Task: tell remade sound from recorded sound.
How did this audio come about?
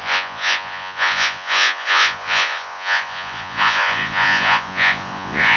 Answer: remade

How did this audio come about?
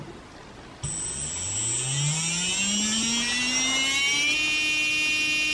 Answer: recorded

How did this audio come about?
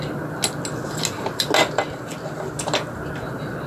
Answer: recorded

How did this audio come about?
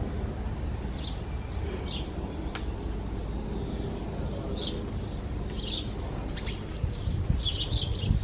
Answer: recorded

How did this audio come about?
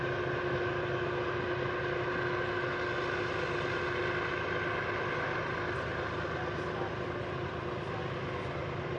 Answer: recorded